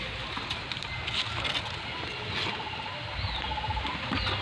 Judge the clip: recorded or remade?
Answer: recorded